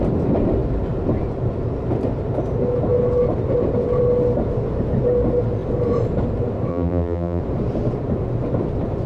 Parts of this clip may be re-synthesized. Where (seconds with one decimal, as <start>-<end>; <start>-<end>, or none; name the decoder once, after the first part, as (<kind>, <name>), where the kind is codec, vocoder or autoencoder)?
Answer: 6.7-7.4 (vocoder, BigVGAN v2)